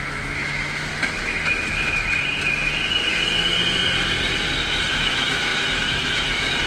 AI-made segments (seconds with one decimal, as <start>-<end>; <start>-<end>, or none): 0.0-0.9; 4.9-6.7